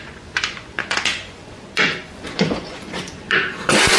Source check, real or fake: fake